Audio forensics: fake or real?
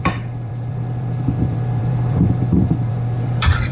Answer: fake